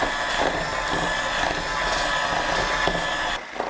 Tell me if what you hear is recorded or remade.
recorded